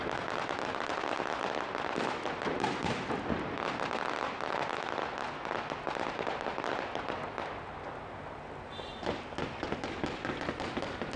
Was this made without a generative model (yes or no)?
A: yes